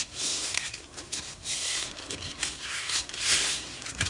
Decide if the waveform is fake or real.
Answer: fake